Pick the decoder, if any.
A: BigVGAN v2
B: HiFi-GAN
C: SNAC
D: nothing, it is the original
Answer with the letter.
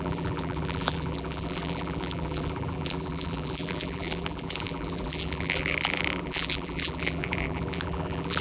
A